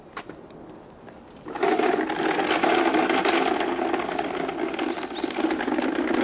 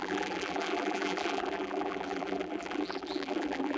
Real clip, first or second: first